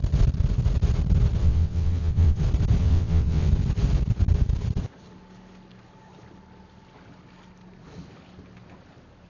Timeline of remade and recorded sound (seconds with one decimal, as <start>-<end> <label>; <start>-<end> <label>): 0.0-1.4 recorded; 1.4-2.4 remade; 2.4-2.8 recorded; 2.8-3.5 remade; 3.5-9.3 recorded